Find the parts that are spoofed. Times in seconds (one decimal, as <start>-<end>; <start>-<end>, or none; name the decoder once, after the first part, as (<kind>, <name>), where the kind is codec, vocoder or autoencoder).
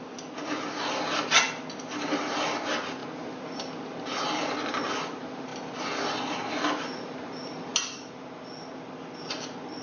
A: none